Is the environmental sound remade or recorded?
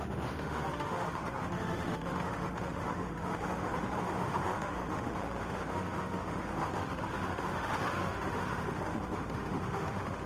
remade